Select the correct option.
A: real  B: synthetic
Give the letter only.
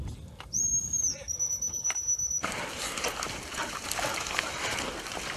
A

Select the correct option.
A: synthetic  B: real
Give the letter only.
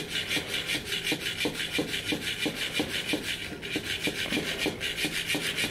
B